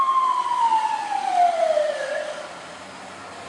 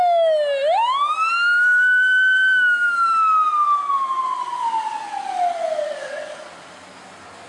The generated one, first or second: first